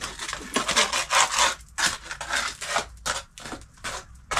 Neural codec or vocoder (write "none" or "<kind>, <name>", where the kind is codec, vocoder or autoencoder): none